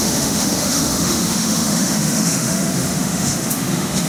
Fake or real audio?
fake